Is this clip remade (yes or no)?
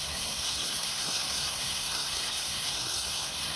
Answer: yes